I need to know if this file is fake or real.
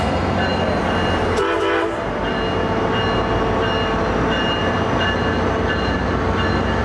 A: real